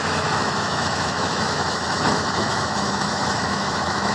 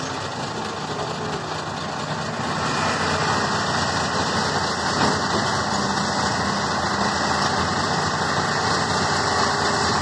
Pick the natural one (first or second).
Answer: second